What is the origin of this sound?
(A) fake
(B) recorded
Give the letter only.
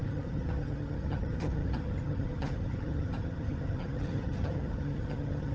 A